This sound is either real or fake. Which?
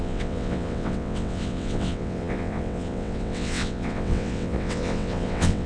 fake